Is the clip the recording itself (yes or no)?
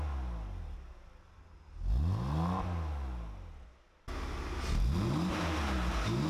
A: yes